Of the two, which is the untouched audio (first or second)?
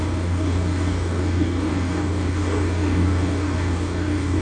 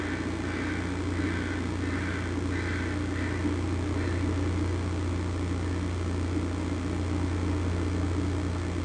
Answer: second